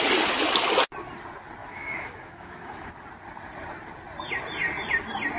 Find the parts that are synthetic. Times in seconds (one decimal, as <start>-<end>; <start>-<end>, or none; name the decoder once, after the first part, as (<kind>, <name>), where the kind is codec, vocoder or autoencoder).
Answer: 1.6-2.9 (autoencoder, DAC-VAE)